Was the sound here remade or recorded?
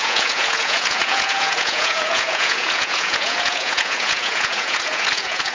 remade